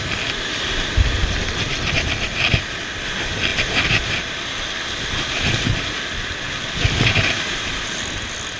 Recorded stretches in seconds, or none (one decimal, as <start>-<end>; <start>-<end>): 0.0-8.6